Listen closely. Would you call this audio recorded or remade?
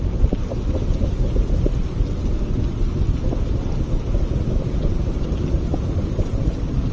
recorded